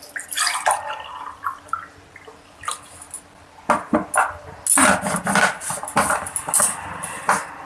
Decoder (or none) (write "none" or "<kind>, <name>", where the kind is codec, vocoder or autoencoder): none